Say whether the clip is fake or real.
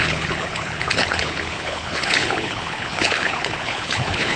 fake